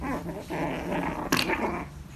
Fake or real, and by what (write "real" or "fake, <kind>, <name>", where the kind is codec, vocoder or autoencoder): real